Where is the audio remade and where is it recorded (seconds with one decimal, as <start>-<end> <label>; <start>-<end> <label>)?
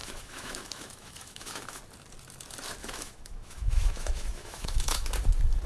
0.0-1.8 remade; 1.8-2.8 recorded; 2.8-5.1 remade; 5.1-5.7 recorded